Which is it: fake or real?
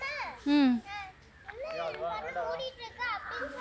real